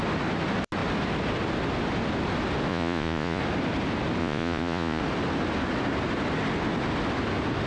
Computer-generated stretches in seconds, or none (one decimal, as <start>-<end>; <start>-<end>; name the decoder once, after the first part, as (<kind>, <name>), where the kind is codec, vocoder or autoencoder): 2.7-3.4 (vocoder, Vocos); 4.2-5.0